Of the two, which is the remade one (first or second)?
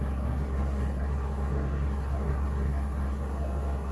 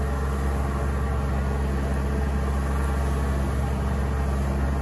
first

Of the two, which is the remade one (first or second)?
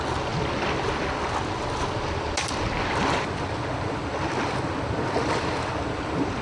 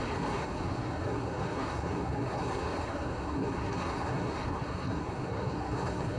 second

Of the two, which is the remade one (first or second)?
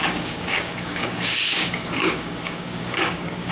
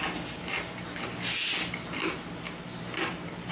first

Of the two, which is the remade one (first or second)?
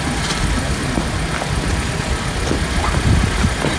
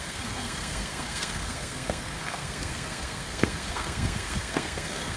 second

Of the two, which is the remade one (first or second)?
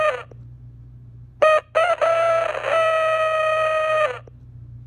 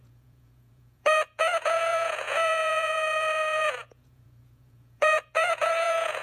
second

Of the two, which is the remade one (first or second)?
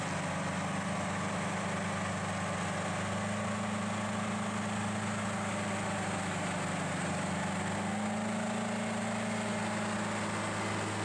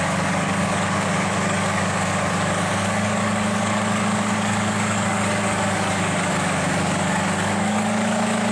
second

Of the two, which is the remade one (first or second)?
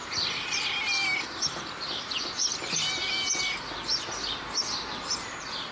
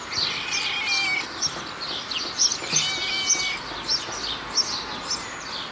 first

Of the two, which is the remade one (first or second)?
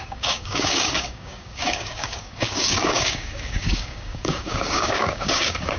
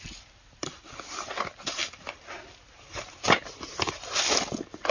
first